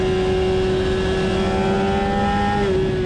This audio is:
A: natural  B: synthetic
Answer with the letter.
A